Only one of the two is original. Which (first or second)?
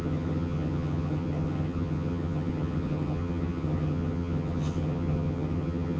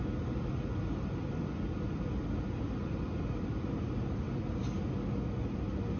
second